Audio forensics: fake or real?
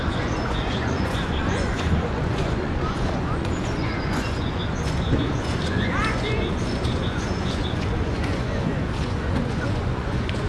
fake